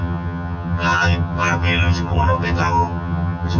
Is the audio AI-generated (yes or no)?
yes